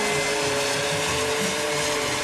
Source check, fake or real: real